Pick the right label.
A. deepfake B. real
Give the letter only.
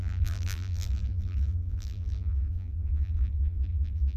A